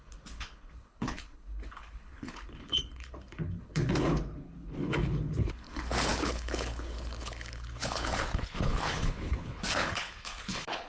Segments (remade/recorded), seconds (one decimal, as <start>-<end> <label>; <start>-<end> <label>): 0.0-10.9 remade